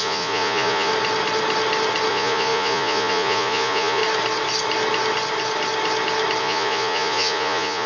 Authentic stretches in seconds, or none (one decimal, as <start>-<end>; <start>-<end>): 0.9-2.1; 4.0-6.4